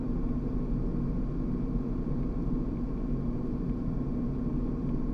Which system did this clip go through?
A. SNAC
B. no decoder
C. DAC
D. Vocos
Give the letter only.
B